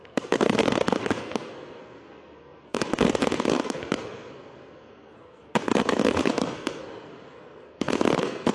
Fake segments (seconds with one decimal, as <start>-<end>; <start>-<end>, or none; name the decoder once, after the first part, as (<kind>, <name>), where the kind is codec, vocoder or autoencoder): 0.0-8.5 (codec, SNAC)